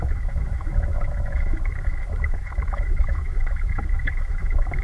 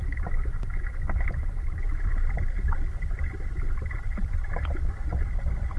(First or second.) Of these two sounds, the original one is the second